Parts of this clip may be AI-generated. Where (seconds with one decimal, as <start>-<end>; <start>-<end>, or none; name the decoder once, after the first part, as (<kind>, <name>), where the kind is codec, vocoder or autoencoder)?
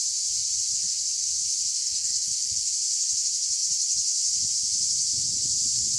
1.8-2.7 (codec, SNAC)